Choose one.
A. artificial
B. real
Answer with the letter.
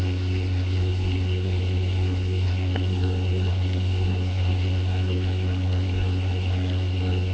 A